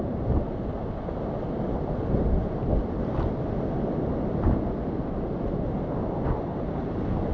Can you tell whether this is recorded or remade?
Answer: recorded